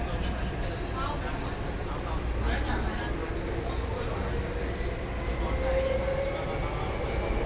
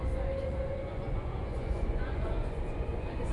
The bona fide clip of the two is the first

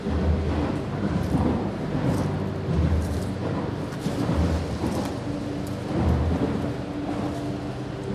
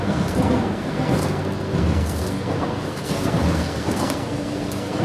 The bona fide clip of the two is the first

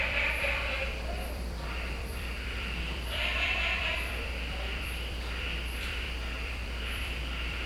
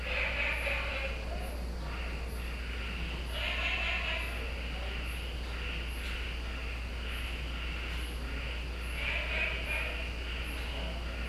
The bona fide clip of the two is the second